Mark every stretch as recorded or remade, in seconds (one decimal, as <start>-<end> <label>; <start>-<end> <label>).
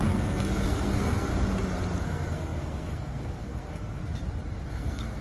0.0-1.3 remade; 1.3-2.0 recorded; 2.0-4.0 remade; 4.0-4.7 recorded; 4.7-5.2 remade